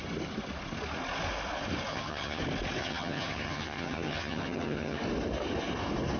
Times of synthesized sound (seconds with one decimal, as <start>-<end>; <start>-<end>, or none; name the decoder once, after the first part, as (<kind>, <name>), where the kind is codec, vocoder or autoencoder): 1.9-2.4 (vocoder, HiFi-GAN); 2.8-5.0